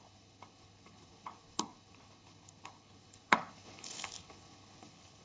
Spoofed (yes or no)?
yes